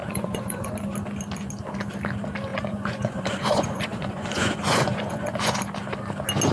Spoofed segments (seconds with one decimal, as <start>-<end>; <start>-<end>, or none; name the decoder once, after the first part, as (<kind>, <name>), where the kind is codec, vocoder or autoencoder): 0.0-0.7 (vocoder, Vocos); 2.5-5.6